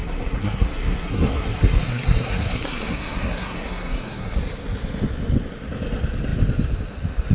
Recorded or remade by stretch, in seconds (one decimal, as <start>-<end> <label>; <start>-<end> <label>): 0.0-4.4 remade; 4.4-7.3 recorded